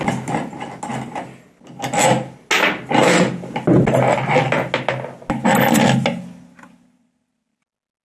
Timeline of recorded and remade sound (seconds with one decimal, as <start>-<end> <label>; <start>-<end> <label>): 0.0-8.0 recorded